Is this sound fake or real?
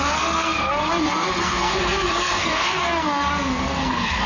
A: fake